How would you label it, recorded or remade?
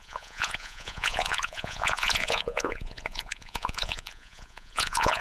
remade